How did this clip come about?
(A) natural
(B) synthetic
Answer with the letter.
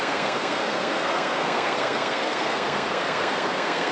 B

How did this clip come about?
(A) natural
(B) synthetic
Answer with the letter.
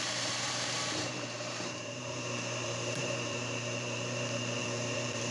B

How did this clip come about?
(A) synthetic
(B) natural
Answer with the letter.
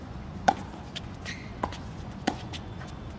A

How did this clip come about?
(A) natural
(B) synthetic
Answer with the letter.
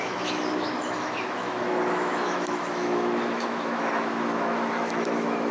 B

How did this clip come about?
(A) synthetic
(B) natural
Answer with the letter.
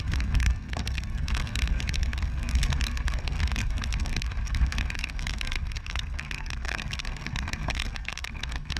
A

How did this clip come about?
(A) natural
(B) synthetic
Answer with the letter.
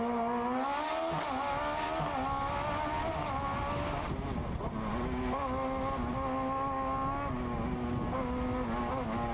A